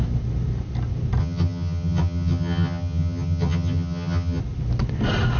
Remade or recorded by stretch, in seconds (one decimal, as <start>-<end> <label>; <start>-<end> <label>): 0.0-1.2 recorded; 1.2-4.4 remade; 4.4-5.4 recorded